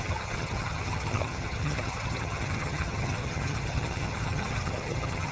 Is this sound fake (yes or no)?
yes